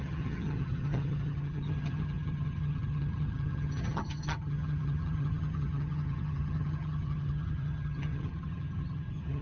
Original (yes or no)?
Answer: no